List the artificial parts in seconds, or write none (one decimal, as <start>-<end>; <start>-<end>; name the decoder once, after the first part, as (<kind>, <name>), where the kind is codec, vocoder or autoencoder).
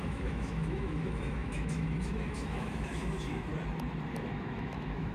0.0-3.5 (autoencoder, DAC-VAE); 4.1-5.1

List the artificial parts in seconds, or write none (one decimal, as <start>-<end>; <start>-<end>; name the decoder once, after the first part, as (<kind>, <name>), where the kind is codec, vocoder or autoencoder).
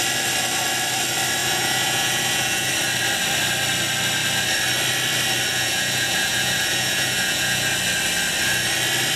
1.4-2.7 (vocoder, Vocos); 5.5-7.7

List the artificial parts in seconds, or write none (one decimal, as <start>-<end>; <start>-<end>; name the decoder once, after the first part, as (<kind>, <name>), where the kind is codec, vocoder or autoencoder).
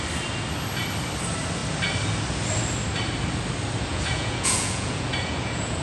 3.9-5.8 (vocoder, Vocos)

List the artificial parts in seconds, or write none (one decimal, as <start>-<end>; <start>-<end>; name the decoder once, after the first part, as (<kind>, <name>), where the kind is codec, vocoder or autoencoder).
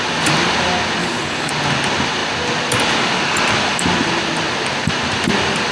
1.0-1.5 (codec, HILCodec)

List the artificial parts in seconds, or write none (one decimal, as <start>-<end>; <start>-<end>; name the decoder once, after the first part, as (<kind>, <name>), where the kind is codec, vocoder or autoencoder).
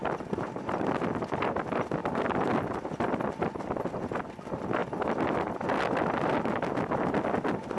none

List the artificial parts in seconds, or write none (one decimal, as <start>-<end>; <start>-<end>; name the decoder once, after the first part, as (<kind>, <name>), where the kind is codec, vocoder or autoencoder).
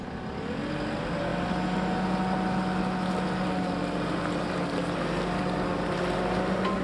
none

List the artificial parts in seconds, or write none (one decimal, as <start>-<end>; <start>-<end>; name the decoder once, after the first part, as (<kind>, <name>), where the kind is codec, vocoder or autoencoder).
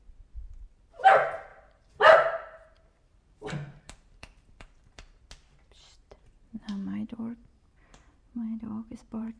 1.5-5.2 (vocoder, BigVGAN v2); 6.0-9.4